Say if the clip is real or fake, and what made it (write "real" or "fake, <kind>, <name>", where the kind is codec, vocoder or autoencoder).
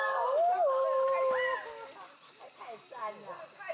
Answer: real